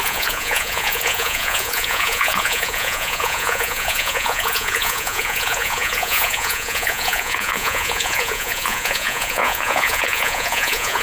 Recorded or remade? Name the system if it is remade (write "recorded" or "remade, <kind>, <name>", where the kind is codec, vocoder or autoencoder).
remade, vocoder, Vocos